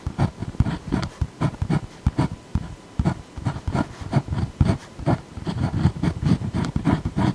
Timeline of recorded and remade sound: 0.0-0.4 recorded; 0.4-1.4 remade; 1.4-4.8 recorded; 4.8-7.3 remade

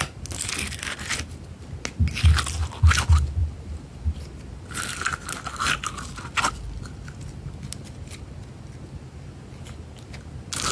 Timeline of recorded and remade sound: 0.0-10.7 recorded